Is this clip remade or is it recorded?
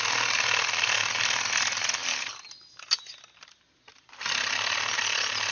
recorded